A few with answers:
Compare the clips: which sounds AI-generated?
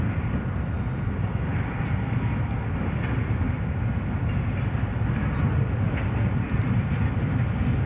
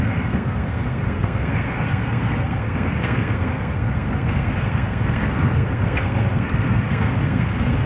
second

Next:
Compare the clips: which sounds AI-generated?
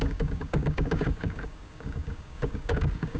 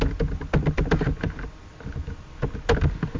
first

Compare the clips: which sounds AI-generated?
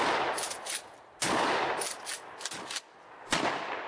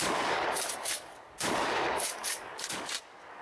second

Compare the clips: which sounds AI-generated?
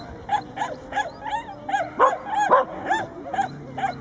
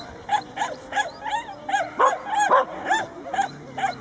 second